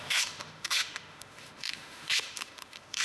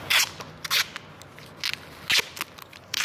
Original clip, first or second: second